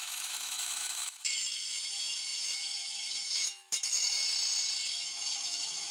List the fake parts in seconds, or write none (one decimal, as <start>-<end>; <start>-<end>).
0.0-4.2; 4.9-5.9